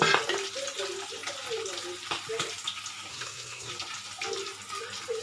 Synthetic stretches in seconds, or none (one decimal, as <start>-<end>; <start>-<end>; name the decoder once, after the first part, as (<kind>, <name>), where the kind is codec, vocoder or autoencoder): 3.1-3.7 (codec, SNAC)